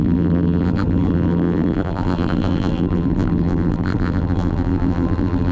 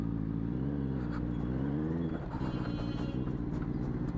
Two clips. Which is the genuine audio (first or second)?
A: second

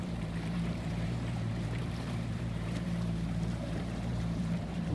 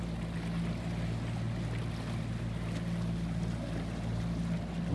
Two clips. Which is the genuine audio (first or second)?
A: second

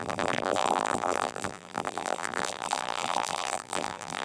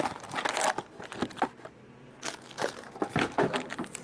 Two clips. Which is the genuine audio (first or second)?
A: second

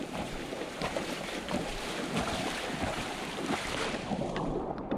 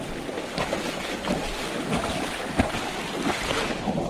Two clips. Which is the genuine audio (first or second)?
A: second